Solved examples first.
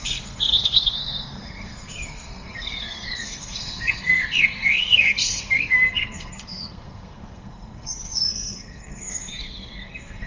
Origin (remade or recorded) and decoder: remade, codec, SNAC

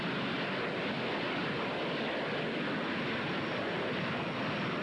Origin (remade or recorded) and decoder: recorded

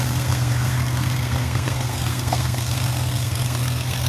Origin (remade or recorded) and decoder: remade, codec, SNAC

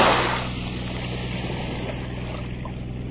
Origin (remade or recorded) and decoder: recorded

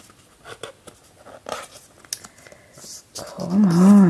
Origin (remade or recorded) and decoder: recorded